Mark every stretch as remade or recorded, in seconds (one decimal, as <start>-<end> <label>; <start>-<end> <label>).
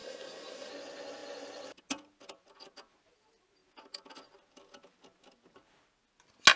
0.0-0.7 remade; 0.7-6.6 recorded